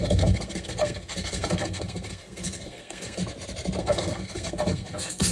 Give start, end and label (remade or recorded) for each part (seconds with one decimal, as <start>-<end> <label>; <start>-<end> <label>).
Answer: 0.0-3.2 remade; 3.2-3.8 recorded; 3.8-5.3 remade